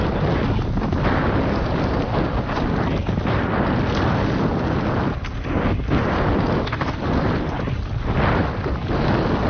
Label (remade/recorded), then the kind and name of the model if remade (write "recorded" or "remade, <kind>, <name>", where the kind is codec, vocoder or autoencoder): recorded